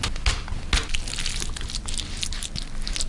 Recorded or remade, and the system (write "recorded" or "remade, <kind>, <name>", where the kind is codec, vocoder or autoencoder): recorded